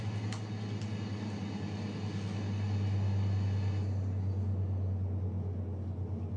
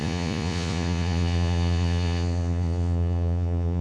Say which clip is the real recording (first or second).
first